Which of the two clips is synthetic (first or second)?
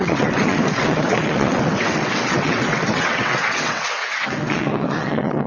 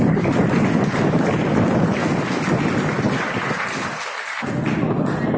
first